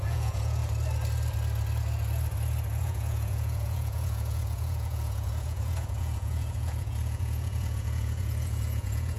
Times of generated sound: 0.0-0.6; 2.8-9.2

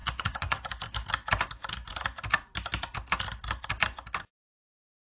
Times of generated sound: 0.0-0.7

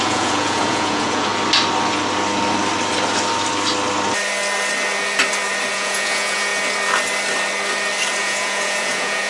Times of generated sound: 0.0-1.3; 5.7-6.5; 8.2-9.3